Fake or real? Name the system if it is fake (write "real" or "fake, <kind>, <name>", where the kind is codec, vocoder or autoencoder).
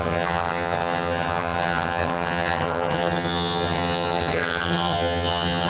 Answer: fake, vocoder, HiFi-GAN